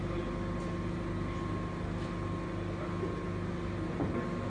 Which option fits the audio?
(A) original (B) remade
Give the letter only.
A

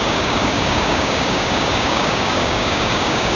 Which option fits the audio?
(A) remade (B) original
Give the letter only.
A